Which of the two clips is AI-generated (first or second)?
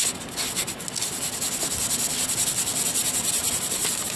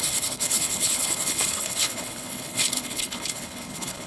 second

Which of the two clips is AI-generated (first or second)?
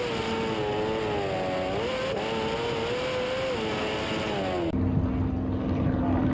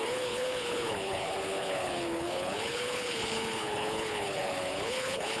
second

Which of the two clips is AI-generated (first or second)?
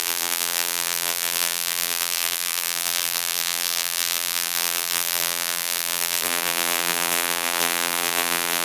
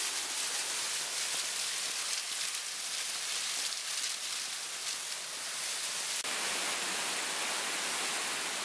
first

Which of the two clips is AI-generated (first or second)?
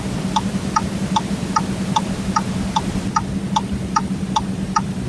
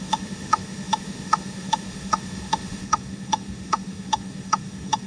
second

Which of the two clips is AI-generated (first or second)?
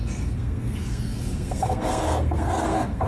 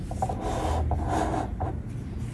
first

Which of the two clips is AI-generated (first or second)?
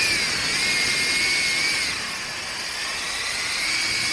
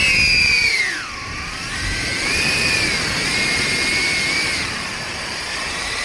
second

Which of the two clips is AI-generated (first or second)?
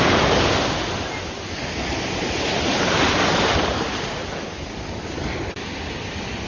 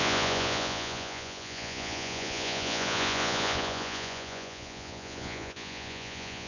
second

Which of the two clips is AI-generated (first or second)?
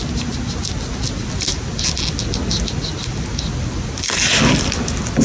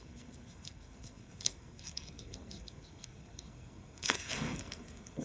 second